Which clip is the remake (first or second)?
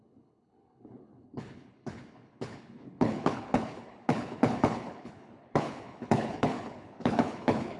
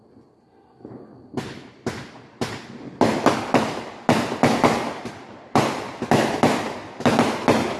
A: first